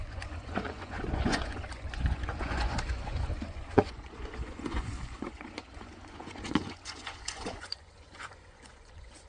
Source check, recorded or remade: remade